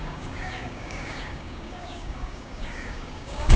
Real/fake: fake